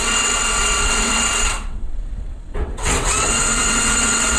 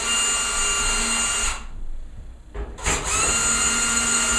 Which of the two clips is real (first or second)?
second